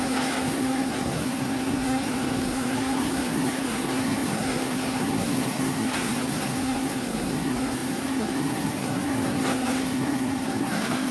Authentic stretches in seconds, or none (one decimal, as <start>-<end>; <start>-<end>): none